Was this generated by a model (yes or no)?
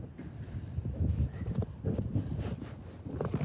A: no